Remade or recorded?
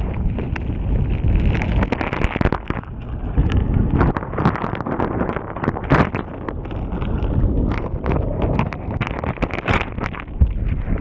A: recorded